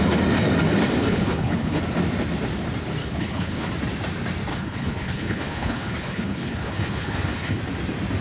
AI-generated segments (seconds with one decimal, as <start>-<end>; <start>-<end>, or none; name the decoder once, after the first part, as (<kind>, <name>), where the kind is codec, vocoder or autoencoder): 1.0-1.8 (codec, HILCodec); 3.0-3.7; 4.5-7.6